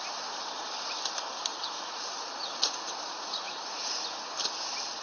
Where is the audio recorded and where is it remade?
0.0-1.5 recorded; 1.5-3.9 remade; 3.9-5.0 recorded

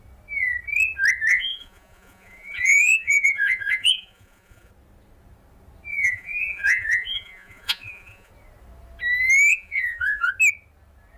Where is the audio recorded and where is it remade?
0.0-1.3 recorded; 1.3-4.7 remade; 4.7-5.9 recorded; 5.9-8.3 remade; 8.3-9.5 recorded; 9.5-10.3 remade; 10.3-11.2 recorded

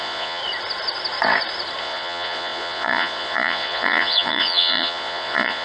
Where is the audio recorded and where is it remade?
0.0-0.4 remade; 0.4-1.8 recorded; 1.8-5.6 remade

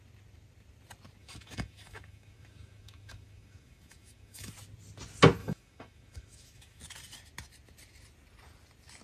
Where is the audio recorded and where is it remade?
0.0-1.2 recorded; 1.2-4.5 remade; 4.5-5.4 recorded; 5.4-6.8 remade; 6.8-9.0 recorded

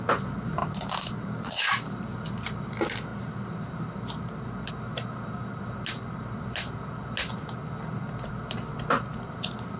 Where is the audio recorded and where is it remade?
0.0-0.6 recorded; 0.6-2.0 remade; 2.0-3.1 recorded; 3.1-4.7 remade; 4.7-9.8 recorded